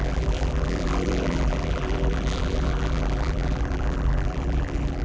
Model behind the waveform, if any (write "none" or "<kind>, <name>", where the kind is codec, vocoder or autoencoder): vocoder, BigVGAN v2